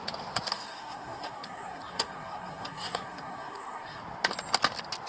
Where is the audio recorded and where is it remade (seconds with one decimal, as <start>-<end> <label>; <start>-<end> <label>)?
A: 0.0-0.5 recorded; 0.5-4.0 remade; 4.0-5.1 recorded